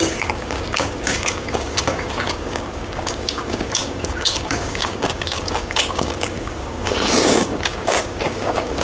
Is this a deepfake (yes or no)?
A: yes